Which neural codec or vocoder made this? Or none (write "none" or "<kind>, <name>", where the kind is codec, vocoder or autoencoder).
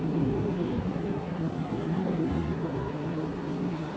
codec, SNAC